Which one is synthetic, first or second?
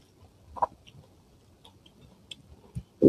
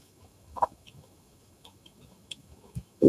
second